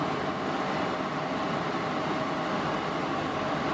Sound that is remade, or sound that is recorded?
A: recorded